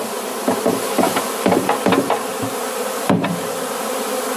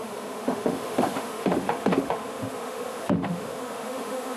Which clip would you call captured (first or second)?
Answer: first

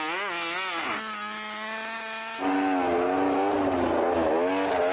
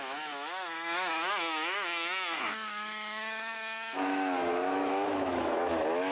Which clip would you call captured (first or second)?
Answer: first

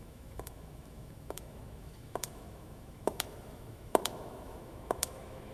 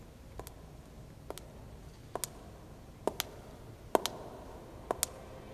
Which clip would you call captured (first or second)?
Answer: second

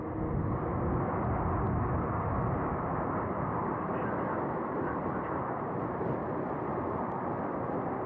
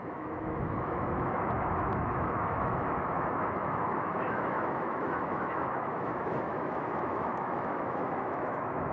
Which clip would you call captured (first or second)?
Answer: first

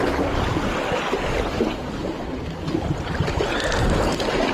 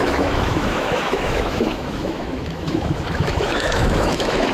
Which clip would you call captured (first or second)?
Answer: first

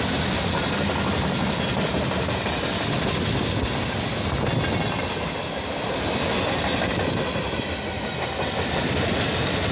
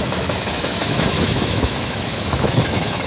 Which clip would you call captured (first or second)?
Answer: first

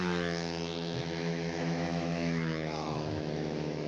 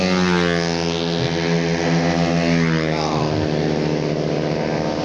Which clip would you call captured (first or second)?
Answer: second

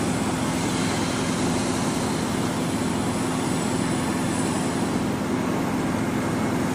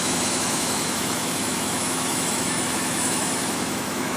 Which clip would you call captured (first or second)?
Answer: first